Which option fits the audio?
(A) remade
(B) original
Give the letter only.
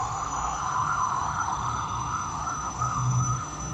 A